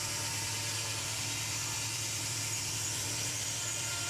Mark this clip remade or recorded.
remade